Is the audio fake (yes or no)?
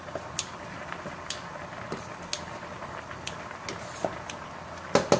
no